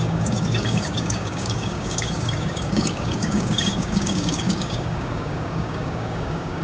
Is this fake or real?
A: fake